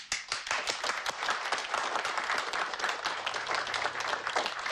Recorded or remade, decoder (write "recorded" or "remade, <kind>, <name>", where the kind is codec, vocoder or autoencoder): recorded